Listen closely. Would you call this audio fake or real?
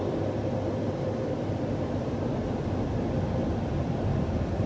real